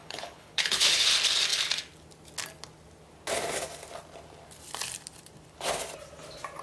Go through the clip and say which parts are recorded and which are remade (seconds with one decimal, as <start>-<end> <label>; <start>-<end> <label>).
0.0-1.0 remade; 1.0-6.6 recorded